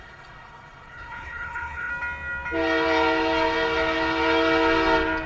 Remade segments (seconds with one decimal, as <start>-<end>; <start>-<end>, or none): 0.0-1.9